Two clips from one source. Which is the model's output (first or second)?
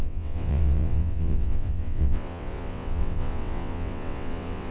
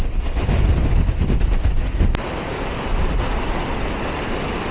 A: first